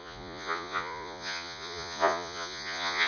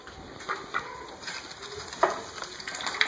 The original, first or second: second